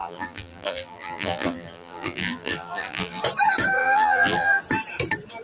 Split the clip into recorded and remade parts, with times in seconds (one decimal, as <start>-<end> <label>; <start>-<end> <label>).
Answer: 0.0-3.2 remade; 3.2-3.8 recorded; 3.8-4.6 remade; 4.6-5.4 recorded